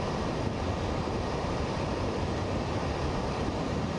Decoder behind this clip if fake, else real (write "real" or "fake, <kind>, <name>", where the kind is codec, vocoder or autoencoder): fake, vocoder, BigVGAN v2